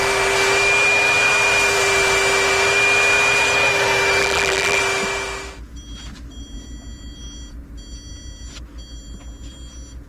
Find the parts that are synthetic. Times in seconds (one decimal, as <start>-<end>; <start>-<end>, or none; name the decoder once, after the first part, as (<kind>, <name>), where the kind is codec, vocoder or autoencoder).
4.2-4.8 (vocoder, BigVGAN v2)